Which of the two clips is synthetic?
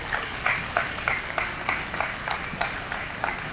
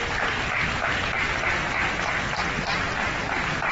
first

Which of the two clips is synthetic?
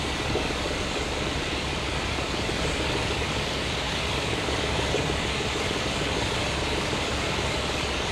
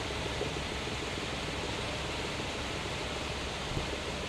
first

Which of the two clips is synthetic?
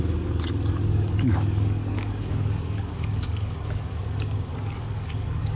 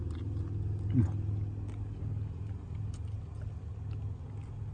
first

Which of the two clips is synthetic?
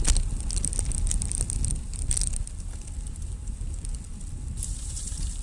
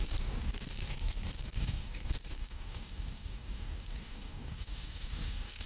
second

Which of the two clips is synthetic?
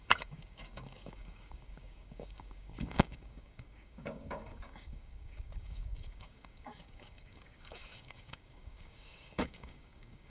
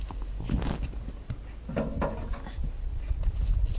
first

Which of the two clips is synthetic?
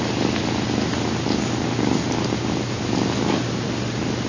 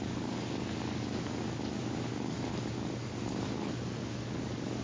second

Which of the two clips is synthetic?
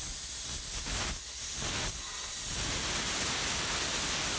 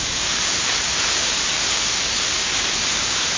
second